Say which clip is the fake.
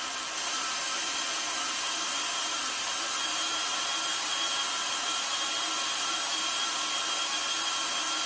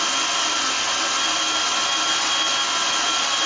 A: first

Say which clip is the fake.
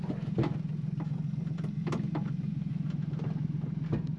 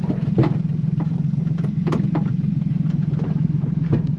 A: second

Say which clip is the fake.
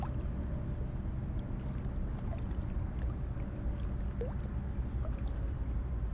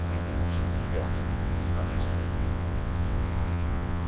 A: second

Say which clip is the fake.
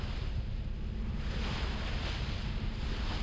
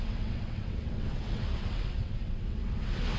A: second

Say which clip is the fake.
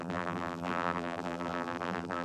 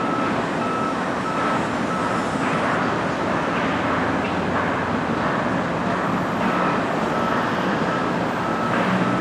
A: first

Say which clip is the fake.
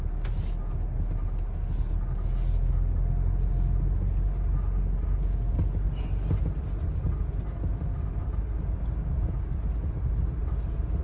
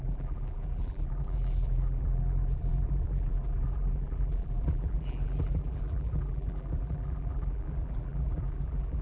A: second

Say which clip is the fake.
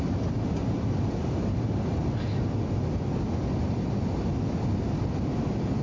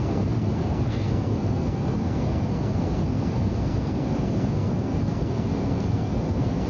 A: second